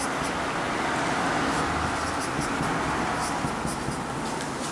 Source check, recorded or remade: recorded